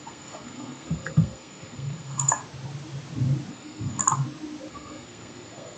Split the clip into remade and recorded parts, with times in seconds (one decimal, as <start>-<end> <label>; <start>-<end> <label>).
0.0-2.4 remade; 2.4-3.5 recorded; 3.5-4.0 remade; 4.0-4.7 recorded; 4.7-5.8 remade